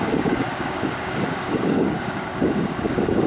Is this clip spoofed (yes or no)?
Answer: yes